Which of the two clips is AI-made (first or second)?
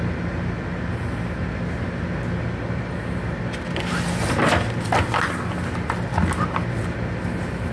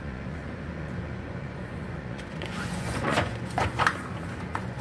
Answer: second